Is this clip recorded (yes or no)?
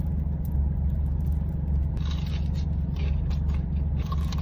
yes